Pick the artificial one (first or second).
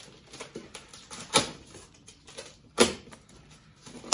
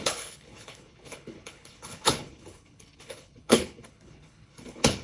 second